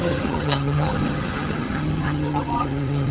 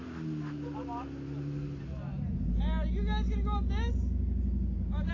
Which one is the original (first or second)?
second